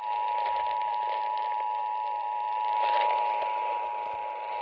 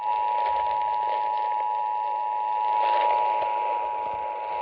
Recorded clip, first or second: second